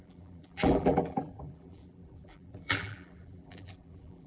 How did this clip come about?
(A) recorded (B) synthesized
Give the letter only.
B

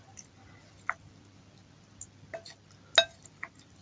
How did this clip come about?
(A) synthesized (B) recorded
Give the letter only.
B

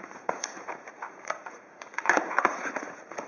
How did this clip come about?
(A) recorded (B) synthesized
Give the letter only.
B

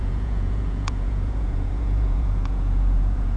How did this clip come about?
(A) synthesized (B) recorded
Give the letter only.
A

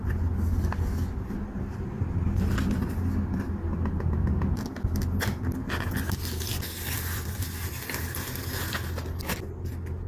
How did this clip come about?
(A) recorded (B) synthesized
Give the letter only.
A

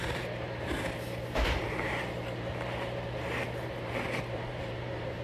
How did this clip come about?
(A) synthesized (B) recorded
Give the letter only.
A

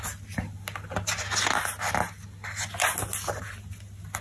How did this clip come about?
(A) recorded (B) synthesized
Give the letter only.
A